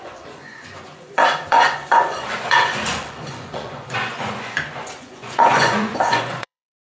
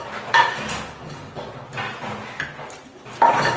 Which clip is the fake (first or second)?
first